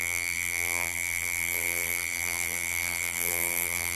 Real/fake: fake